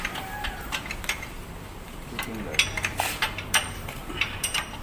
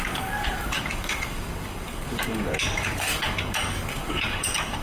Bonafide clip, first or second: first